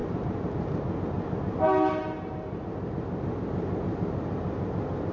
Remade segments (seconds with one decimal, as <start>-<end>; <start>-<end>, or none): none